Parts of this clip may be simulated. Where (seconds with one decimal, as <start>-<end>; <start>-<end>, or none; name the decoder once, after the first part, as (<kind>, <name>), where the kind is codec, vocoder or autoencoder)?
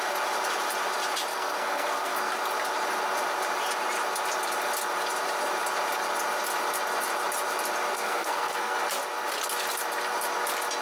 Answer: 1.3-2.3 (codec, SNAC); 7.9-8.8